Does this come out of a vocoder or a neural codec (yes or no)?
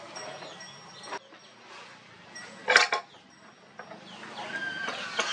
no